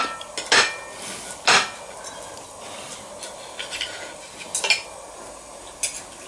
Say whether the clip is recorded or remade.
recorded